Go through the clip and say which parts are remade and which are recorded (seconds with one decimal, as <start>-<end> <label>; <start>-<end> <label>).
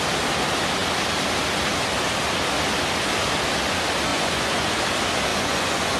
0.0-4.1 recorded; 4.1-4.8 remade; 4.8-5.3 recorded; 5.3-6.0 remade